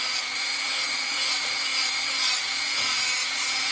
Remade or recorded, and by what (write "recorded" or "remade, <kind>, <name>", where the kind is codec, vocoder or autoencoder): remade, vocoder, Vocos